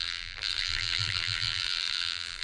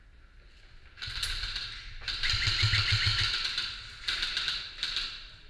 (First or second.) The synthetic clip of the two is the first